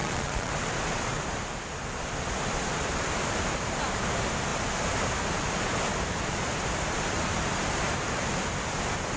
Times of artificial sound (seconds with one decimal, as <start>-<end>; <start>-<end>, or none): 0.0-0.5